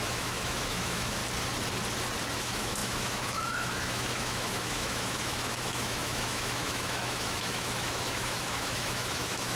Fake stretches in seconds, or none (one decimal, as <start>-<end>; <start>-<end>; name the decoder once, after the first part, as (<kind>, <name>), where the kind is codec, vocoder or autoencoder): 0.0-1.2 (autoencoder, DAC-VAE); 2.3-9.6